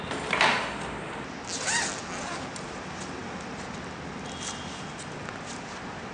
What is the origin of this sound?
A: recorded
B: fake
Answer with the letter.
A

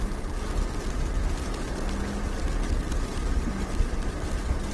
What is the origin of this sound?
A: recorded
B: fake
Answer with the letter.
A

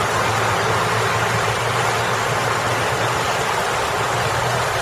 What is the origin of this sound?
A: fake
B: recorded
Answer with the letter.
B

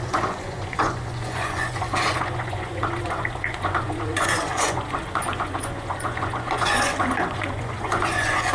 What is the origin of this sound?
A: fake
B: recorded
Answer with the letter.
A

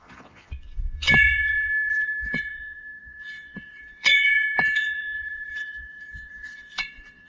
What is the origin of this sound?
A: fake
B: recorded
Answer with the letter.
A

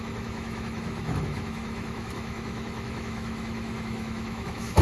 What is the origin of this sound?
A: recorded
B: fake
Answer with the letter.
B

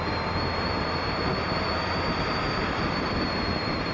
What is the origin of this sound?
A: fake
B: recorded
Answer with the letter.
A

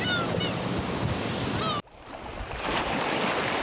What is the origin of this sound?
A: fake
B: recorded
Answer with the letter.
A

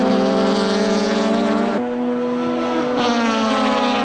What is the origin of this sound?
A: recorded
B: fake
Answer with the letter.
A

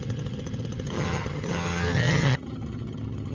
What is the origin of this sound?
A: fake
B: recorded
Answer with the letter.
A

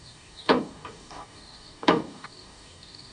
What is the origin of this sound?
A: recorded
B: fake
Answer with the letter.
B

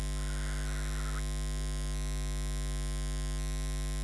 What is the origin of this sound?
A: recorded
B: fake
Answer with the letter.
A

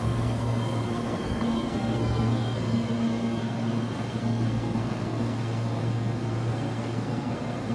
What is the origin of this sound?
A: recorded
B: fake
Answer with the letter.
B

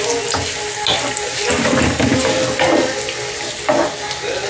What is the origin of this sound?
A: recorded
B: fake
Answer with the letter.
A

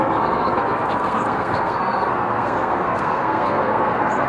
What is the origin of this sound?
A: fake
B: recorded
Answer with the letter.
A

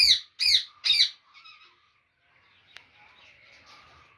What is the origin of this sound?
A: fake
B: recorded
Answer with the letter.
B